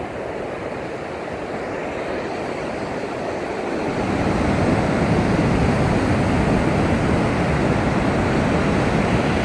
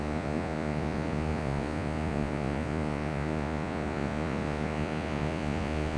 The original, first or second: first